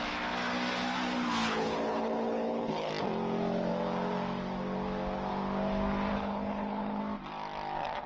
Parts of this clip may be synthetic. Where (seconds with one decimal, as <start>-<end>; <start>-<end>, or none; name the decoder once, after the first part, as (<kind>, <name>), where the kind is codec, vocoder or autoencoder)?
1.5-2.9 (codec, HILCodec); 6.1-7.0